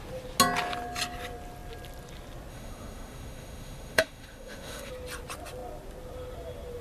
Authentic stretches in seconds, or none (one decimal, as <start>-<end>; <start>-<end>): 0.0-2.5; 4.9-6.8